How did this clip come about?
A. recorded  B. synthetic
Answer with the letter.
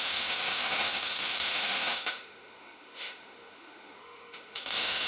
B